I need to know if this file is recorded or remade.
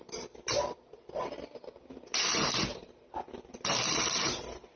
recorded